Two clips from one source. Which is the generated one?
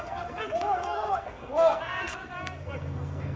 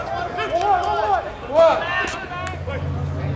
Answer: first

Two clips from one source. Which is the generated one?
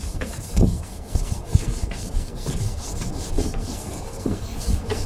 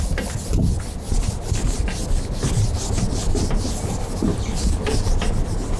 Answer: first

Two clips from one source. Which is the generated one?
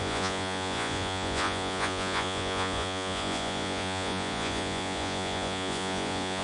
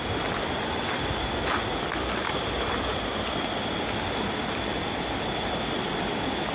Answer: first